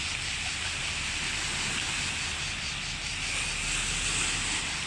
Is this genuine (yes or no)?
yes